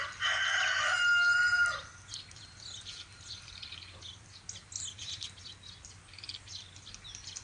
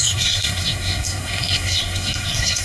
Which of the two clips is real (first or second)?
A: first